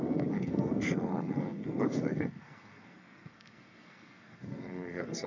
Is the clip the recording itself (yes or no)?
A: no